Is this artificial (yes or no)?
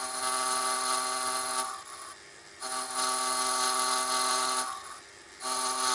no